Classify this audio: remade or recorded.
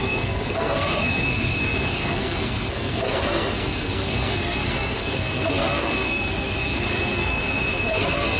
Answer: remade